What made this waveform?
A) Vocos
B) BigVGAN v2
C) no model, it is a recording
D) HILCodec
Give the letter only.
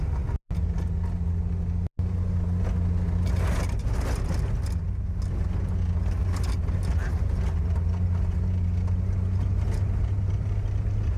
C